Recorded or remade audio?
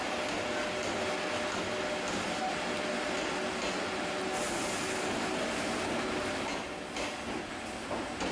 recorded